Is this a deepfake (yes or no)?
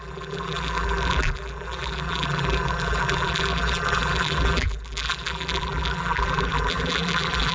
yes